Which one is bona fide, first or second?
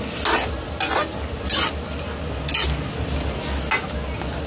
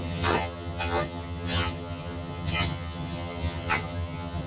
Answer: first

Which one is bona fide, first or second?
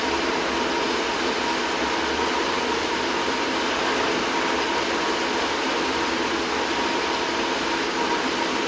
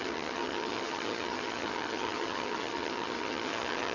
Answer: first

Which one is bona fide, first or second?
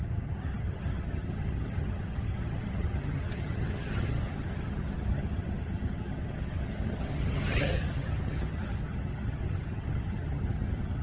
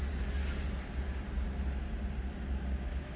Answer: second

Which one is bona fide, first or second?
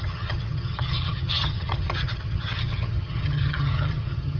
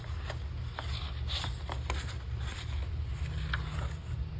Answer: second